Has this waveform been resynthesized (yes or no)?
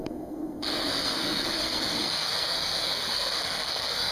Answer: yes